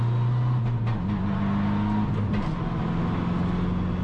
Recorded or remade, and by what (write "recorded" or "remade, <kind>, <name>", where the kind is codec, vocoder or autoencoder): recorded